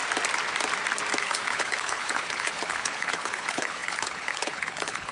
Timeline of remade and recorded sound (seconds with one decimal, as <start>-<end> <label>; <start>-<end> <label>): 0.0-1.2 recorded; 1.2-5.1 remade